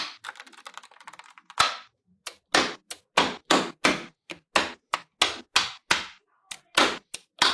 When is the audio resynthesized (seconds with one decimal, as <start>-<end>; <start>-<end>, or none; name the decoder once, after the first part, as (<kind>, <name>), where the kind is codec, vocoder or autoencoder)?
none